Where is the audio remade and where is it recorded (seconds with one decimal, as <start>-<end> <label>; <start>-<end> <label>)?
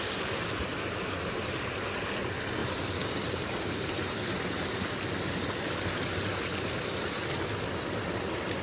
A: 0.0-2.6 recorded; 2.6-5.0 remade; 5.0-8.6 recorded